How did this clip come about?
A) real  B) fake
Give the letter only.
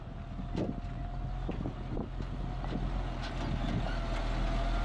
A